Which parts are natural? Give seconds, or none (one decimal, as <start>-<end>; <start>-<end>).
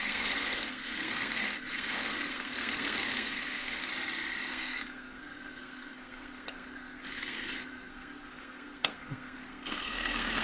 3.9-4.5